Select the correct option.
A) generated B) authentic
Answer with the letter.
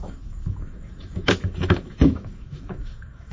A